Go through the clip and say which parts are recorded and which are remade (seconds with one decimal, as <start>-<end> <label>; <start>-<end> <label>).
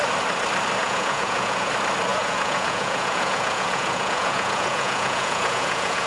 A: 0.0-0.8 recorded; 0.8-1.7 remade; 1.7-2.1 recorded; 2.1-6.1 remade